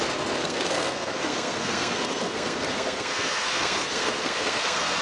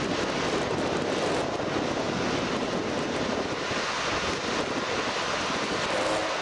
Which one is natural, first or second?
second